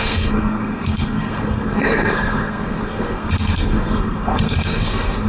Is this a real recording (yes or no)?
no